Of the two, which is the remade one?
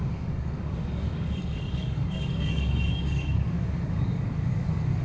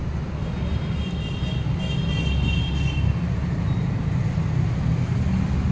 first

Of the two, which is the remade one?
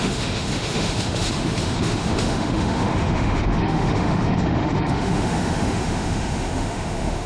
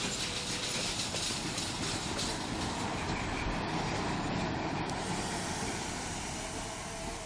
first